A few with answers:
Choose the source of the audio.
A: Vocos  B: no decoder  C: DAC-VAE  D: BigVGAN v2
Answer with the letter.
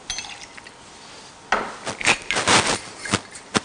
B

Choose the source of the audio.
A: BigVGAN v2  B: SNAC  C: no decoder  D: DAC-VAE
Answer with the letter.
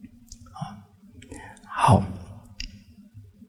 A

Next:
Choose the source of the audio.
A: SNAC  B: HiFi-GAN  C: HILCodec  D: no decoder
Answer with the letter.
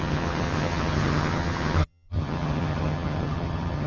B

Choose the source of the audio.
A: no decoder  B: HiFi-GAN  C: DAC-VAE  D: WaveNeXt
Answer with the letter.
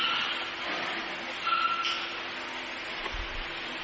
A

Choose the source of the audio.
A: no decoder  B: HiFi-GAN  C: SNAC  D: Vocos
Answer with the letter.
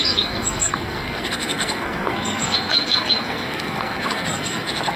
C